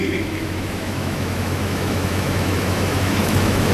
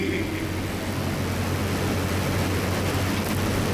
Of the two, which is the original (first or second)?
second